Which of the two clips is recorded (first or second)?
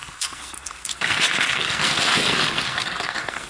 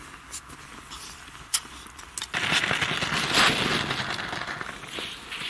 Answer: second